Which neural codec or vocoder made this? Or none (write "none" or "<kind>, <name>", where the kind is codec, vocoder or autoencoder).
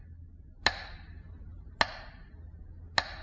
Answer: none